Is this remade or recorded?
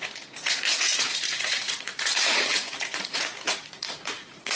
remade